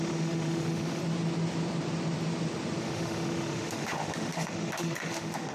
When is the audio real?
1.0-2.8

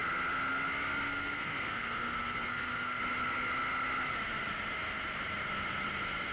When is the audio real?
0.0-1.1; 3.0-6.3

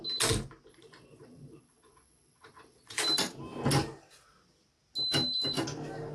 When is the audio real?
0.0-0.7; 3.0-6.1